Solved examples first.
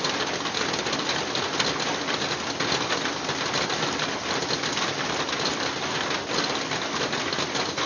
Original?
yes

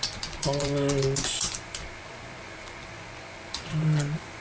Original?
no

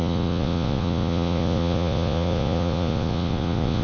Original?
no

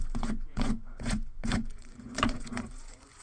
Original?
no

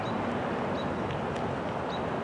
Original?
yes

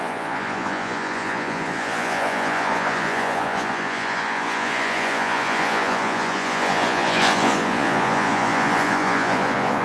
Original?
no